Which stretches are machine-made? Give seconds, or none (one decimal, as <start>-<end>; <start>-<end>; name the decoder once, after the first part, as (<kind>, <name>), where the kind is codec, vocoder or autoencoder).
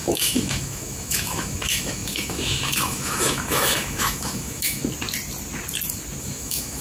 0.0-4.8 (autoencoder, DAC-VAE); 6.2-6.8